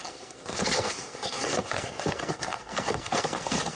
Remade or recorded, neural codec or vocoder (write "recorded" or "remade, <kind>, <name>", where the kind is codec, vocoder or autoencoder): remade, codec, SNAC